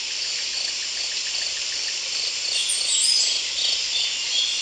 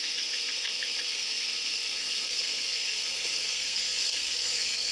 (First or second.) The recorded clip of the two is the first